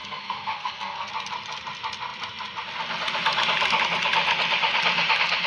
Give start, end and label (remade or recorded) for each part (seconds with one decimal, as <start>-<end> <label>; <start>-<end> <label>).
0.0-1.1 remade; 1.1-5.5 recorded